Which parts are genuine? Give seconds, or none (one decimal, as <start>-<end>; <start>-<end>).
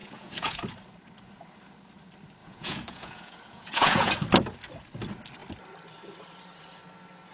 0.6-2.4; 4.1-7.3